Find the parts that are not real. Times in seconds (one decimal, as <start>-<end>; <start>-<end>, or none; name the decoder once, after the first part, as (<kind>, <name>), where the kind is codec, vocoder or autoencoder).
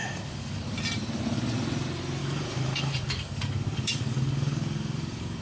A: 0.0-0.6 (codec, DAC); 2.2-5.4